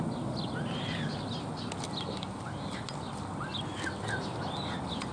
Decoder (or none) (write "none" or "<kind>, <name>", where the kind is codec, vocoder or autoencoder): none